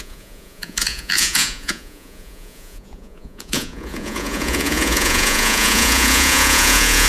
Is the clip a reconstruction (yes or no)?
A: yes